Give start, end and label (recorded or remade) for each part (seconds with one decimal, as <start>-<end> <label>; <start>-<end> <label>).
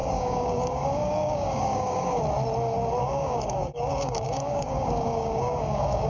0.0-2.2 remade; 2.2-3.0 recorded; 3.0-6.1 remade